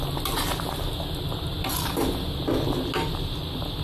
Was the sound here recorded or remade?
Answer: recorded